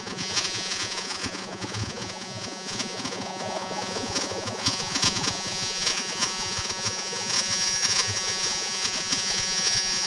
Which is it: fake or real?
fake